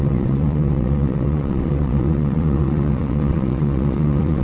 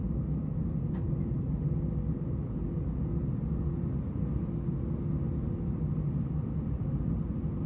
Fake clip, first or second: first